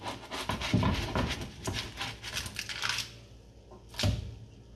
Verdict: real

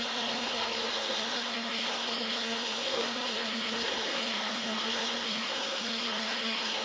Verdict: fake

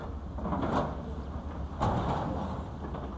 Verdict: real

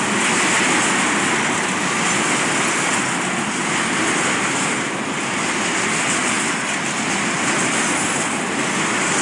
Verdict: real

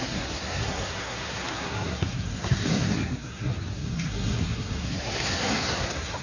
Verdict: fake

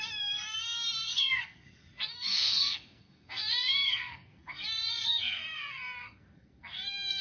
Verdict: fake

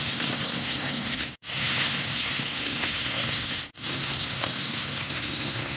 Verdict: fake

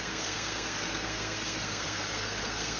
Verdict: fake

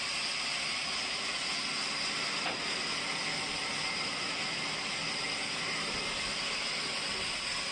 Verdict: real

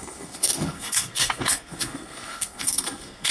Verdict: fake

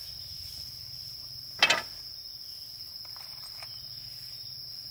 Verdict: real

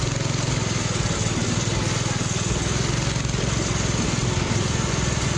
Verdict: real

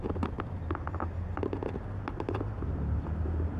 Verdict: real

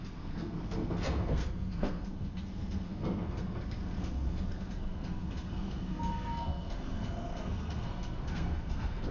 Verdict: fake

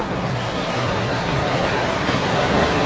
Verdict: fake